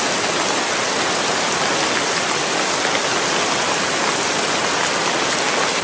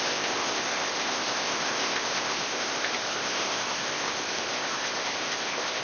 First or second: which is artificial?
second